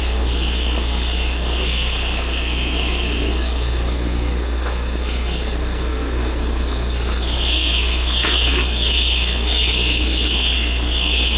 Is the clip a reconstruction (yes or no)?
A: yes